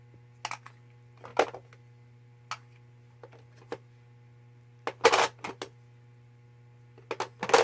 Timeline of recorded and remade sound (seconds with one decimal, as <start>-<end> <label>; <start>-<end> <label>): 0.0-7.6 recorded